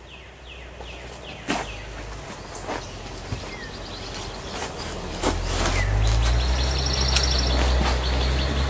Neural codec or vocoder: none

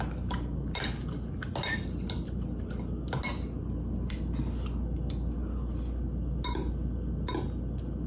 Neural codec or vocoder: none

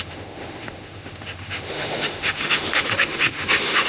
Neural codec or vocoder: autoencoder, DAC-VAE